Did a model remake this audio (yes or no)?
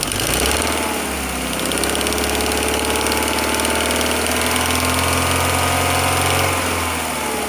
no